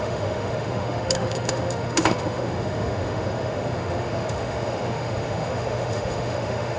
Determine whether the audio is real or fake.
fake